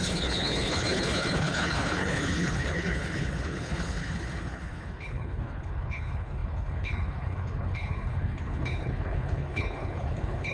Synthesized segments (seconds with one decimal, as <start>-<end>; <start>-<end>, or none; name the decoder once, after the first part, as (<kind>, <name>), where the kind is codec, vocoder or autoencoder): 0.0-10.5 (codec, HILCodec)